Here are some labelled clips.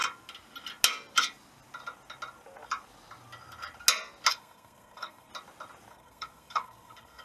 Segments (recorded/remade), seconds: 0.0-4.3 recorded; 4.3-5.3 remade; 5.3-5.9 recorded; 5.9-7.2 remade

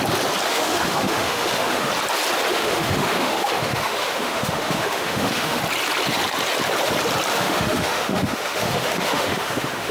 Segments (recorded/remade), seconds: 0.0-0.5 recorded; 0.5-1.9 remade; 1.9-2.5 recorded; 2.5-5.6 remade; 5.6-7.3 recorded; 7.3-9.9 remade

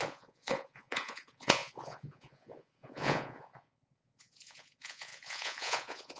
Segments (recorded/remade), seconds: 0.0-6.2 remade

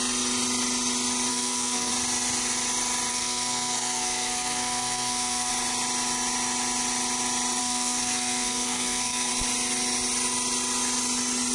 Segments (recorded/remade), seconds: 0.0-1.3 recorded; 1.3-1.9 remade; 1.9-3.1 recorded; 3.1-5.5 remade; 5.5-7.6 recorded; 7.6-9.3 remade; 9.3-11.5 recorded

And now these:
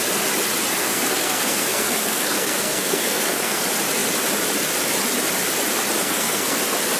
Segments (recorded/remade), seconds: 0.0-0.8 recorded; 0.8-3.6 remade; 3.6-6.0 recorded; 6.0-6.6 remade; 6.6-7.0 recorded

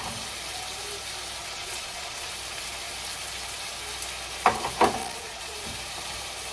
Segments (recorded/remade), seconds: 0.0-1.4 recorded; 1.4-2.3 remade; 2.3-5.0 recorded; 5.0-5.6 remade; 5.6-6.5 recorded